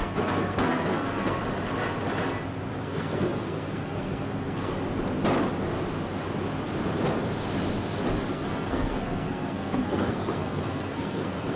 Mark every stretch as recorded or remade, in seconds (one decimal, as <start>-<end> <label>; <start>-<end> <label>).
0.0-1.4 remade; 1.4-2.8 recorded; 2.8-4.7 remade; 4.7-8.3 recorded; 8.3-11.6 remade